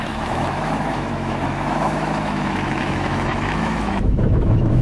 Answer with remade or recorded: remade